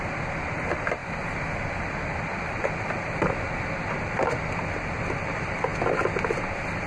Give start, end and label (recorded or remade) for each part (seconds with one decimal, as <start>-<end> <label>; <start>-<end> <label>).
0.0-6.9 recorded